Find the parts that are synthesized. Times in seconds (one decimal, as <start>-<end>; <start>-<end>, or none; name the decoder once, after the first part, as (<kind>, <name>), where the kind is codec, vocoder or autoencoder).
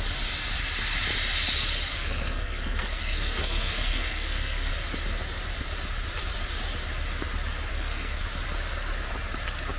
1.9-4.7 (codec, SNAC); 7.7-8.2